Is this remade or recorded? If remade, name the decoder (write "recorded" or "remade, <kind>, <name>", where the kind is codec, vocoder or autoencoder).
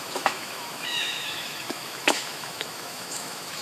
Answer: remade, autoencoder, DAC-VAE